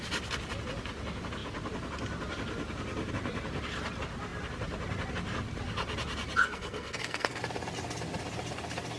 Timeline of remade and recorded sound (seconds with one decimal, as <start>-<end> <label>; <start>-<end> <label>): 0.0-6.4 recorded; 6.4-7.4 remade; 7.4-9.0 recorded